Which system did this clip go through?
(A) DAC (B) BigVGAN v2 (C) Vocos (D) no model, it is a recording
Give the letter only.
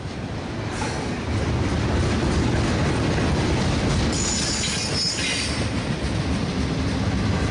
D